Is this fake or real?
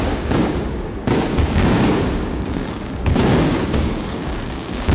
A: fake